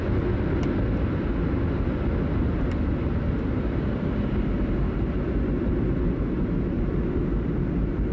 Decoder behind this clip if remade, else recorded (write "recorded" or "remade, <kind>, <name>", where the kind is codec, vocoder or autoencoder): recorded